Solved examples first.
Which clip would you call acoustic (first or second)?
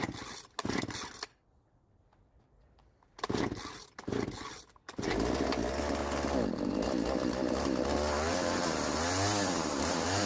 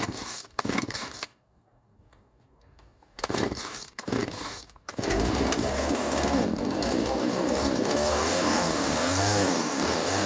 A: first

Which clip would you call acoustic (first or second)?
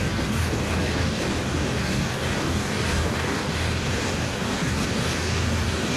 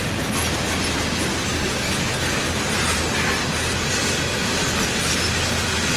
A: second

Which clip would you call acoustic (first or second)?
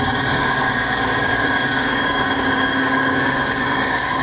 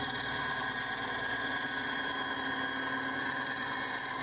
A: second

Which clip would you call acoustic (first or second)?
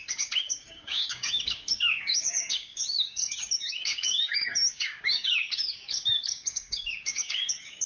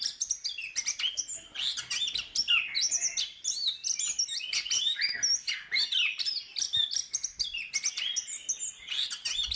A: second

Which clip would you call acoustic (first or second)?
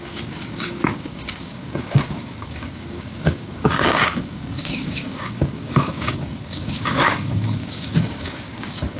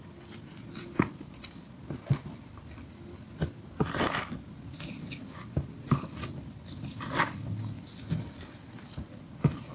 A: second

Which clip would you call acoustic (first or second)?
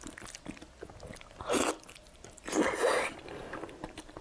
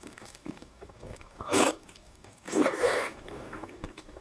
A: first